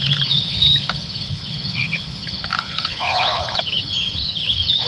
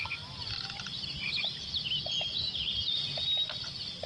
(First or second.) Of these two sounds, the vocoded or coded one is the first